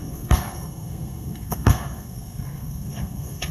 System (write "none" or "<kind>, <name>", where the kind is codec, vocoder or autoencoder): codec, SNAC